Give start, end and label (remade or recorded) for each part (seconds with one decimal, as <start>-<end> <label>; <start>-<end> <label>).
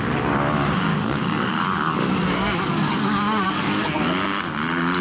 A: 0.0-0.9 recorded; 0.9-3.9 remade; 3.9-5.0 recorded